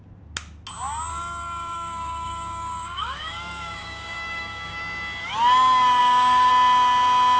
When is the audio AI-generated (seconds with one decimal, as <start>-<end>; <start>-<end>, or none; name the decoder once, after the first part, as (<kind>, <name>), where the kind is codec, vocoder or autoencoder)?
1.1-4.8 (codec, DAC); 6.0-6.5